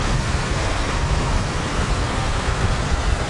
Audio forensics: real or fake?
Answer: fake